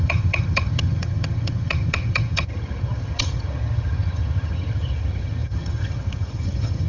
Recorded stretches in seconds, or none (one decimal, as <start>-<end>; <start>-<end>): none